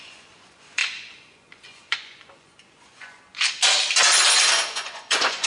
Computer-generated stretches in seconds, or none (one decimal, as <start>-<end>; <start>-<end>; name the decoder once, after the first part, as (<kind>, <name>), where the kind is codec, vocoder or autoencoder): 0.0-3.3 (vocoder, Vocos); 4.7-5.5